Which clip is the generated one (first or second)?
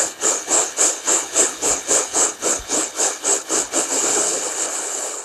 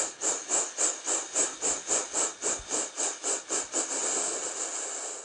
first